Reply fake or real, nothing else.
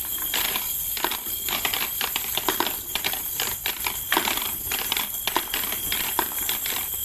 fake